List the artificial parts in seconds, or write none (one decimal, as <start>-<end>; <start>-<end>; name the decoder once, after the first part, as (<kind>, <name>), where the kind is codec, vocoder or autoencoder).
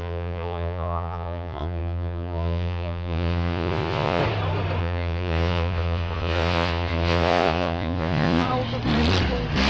0.0-4.2 (vocoder, Vocos); 4.8-8.5